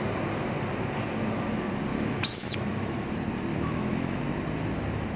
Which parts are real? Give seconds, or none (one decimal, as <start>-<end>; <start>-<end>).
0.0-1.9; 3.1-3.5; 4.2-5.2